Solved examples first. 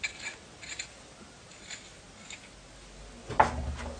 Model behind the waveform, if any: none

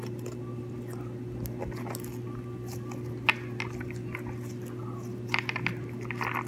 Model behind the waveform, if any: none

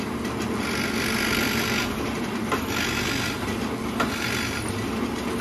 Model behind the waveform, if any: none